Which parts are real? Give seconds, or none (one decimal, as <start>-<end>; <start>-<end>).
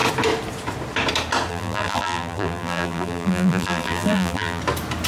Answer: 0.0-1.5; 4.6-5.1